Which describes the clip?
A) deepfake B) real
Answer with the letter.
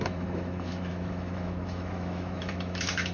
A